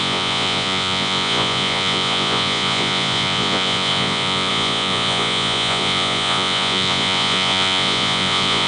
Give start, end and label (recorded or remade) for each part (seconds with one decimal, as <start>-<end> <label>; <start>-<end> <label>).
0.0-8.7 remade